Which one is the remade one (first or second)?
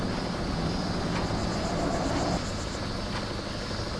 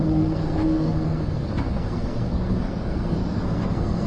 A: second